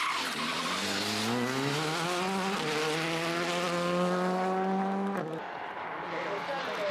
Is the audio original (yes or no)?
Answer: yes